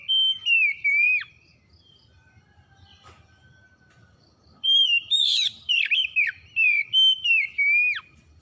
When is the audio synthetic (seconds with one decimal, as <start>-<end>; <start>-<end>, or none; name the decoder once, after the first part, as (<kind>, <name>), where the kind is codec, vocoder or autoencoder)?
0.4-1.5 (vocoder, BigVGAN v2); 4.0-7.5